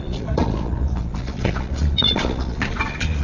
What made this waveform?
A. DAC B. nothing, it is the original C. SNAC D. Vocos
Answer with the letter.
D